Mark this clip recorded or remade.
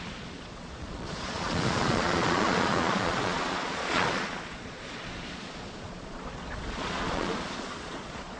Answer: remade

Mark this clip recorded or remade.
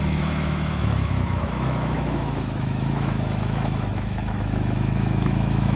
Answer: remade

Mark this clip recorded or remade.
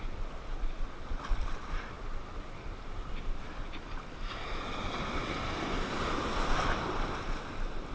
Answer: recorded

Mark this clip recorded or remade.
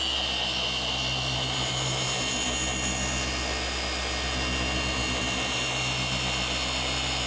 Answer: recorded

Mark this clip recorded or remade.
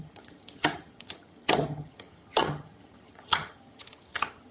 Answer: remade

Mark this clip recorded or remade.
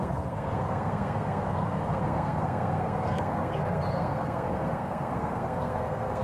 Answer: remade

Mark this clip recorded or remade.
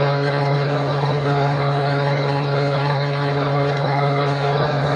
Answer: remade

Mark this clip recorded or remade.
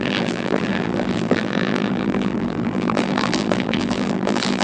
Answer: remade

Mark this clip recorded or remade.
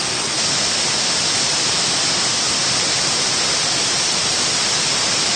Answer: recorded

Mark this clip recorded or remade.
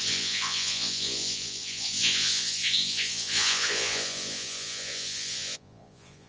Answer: remade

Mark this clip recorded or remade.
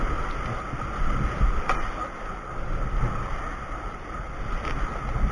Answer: recorded